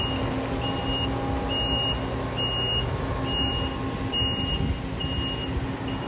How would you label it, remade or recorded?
recorded